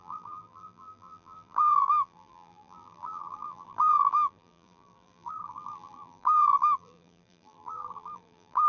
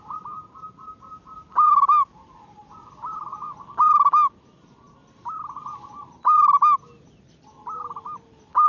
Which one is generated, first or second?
first